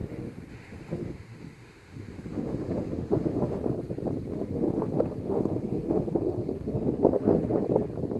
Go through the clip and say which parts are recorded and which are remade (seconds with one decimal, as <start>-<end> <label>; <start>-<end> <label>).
0.0-3.6 remade; 3.6-4.3 recorded; 4.3-7.6 remade; 7.6-8.2 recorded